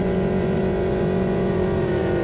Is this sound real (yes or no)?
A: no